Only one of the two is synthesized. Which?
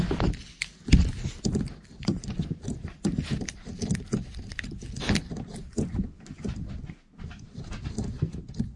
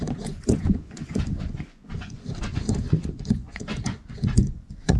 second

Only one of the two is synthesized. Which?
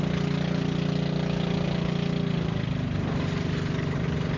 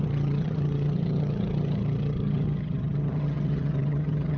second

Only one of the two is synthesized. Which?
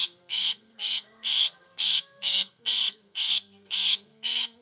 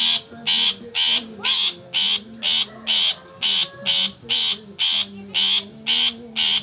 first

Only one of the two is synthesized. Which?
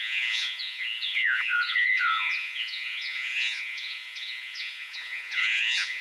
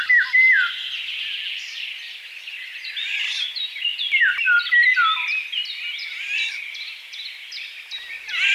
first